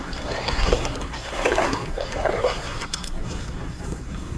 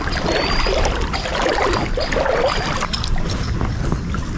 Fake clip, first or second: first